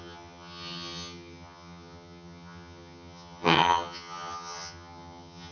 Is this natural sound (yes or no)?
no